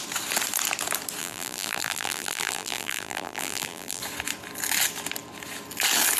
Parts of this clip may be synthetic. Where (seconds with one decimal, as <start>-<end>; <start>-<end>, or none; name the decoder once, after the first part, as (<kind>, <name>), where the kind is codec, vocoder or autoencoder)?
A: 1.2-4.0 (vocoder, BigVGAN v2)